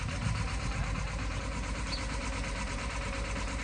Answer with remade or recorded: remade